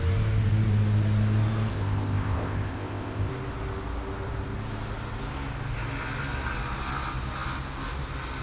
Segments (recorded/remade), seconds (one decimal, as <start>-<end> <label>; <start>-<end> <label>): 0.0-1.7 recorded; 1.7-3.3 remade; 3.3-8.4 recorded